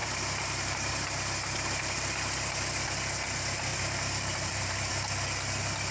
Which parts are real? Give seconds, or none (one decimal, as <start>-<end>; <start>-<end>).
0.9-3.7; 4.9-5.9